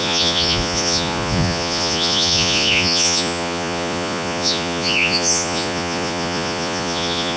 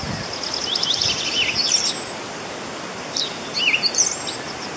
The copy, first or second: first